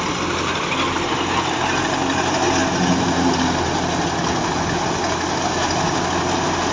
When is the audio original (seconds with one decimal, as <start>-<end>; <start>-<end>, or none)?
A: 0.0-6.7